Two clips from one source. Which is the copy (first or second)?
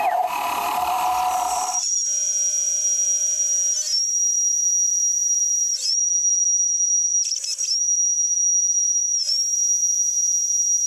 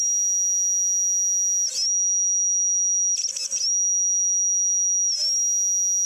first